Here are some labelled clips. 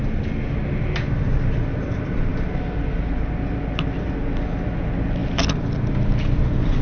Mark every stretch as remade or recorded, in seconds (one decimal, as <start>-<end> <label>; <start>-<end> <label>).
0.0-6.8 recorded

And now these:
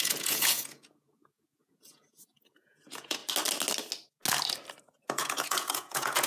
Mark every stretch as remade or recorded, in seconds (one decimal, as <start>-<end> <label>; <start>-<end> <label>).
0.0-3.2 remade; 3.2-4.8 recorded; 4.8-6.3 remade

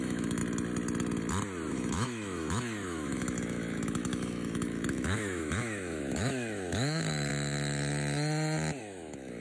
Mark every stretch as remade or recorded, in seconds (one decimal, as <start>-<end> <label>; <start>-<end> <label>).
0.0-0.4 remade; 0.4-1.7 recorded; 1.7-7.3 remade; 7.3-8.8 recorded; 8.8-9.4 remade

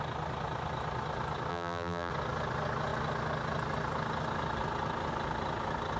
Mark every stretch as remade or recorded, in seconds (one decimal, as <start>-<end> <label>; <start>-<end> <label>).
0.0-1.5 recorded; 1.5-2.1 remade; 2.1-6.0 recorded

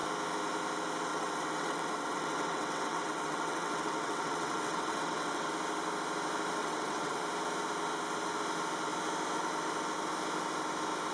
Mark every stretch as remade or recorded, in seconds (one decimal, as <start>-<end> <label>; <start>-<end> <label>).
0.0-1.1 recorded; 1.1-5.5 remade; 5.5-6.6 recorded; 6.6-7.2 remade; 7.2-11.1 recorded

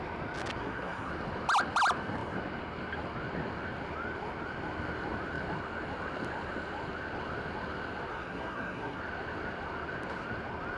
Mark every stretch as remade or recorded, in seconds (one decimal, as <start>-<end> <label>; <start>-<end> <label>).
0.0-0.6 recorded; 0.6-1.1 remade; 1.1-8.1 recorded; 8.1-9.0 remade; 9.0-10.8 recorded